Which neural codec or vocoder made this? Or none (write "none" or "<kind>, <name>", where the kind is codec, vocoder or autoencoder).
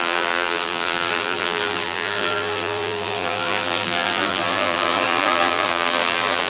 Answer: vocoder, BigVGAN v2